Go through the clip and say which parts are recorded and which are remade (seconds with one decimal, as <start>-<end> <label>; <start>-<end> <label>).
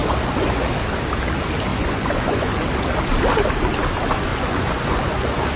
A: 0.0-0.6 remade; 0.6-1.7 recorded; 1.7-2.7 remade; 2.7-4.3 recorded; 4.3-5.6 remade